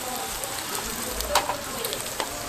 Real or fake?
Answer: fake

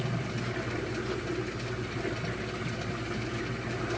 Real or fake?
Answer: real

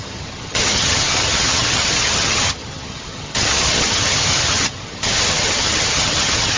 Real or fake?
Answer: fake